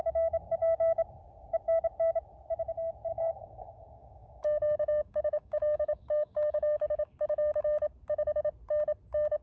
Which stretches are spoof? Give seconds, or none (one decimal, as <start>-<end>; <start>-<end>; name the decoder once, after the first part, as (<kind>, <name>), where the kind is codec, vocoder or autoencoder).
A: 3.1-7.2 (codec, DAC)